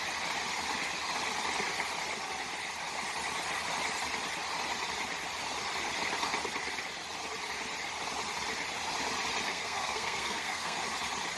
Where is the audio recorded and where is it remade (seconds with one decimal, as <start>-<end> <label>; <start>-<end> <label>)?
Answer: 0.0-9.5 recorded; 9.5-10.8 remade; 10.8-11.4 recorded